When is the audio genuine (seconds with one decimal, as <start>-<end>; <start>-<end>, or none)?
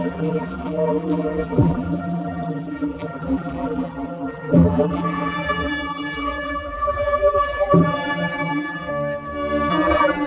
8.9-9.7